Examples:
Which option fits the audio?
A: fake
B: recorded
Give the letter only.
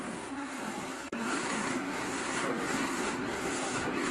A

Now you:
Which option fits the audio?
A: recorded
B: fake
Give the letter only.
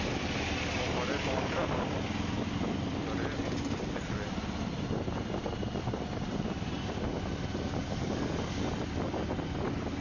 A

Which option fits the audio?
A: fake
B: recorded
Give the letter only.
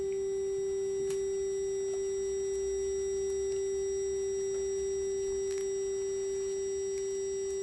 B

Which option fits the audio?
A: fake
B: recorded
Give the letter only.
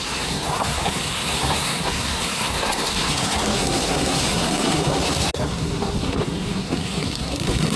A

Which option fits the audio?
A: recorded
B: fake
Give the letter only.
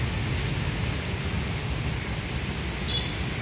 A